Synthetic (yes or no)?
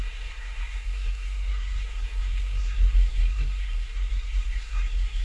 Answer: yes